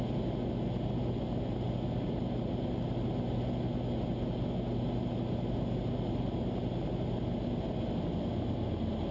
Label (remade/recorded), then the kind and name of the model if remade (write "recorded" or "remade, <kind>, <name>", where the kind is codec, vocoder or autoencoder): recorded